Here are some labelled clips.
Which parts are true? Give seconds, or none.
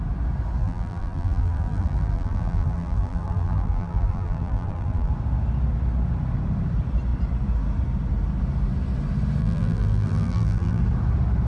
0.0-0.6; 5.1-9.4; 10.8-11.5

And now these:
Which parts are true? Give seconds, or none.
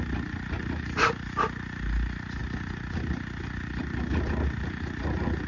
0.0-5.5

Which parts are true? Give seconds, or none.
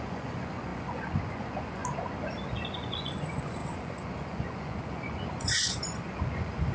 1.8-2.5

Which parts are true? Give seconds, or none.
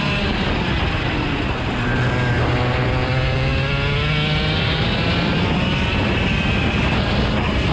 0.0-7.7